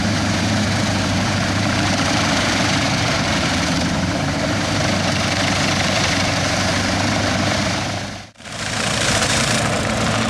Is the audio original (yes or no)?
no